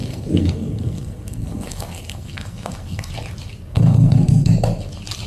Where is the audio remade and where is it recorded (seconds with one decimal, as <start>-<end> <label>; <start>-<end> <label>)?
0.0-3.1 remade; 3.1-3.7 recorded; 3.7-4.5 remade; 4.5-5.3 recorded